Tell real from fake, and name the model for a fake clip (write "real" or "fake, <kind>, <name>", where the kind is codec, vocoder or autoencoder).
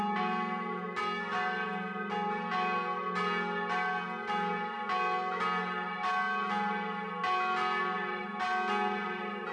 real